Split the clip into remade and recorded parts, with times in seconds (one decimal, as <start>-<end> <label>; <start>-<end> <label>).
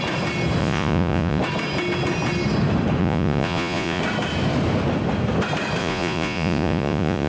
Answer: 0.0-0.6 recorded; 0.6-1.4 remade; 1.4-3.0 recorded; 3.0-4.0 remade; 4.0-5.8 recorded; 5.8-7.3 remade